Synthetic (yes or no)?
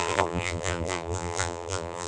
yes